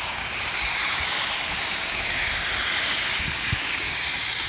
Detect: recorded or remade remade